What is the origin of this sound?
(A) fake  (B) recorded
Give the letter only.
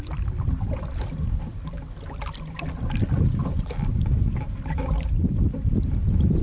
B